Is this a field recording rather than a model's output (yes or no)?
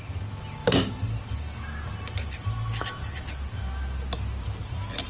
yes